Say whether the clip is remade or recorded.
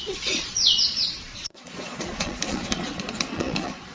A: remade